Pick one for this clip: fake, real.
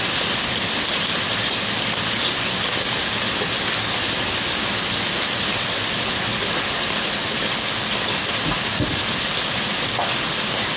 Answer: real